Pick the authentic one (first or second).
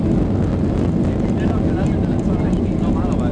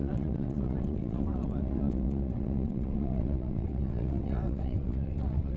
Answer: first